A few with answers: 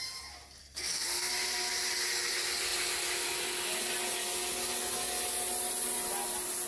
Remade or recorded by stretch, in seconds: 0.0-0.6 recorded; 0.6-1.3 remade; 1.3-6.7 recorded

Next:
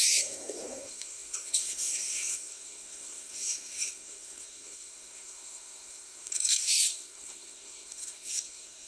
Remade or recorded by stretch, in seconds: 0.0-8.9 remade

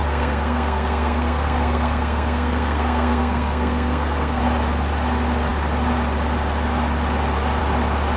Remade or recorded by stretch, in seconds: 0.0-4.4 remade; 4.4-8.2 recorded

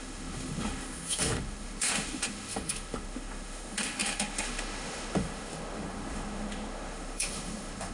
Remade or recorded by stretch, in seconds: 0.0-7.9 remade

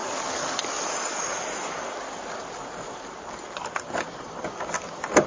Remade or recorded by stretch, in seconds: 0.0-5.3 recorded

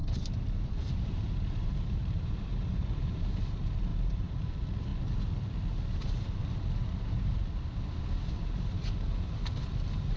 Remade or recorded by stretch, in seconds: 0.0-2.8 remade; 2.8-3.9 recorded; 3.9-4.5 remade; 4.5-10.2 recorded

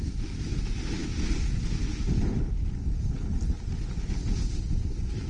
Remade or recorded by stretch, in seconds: 0.0-5.3 recorded

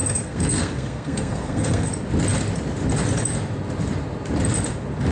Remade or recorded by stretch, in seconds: 0.0-1.9 remade; 1.9-5.1 recorded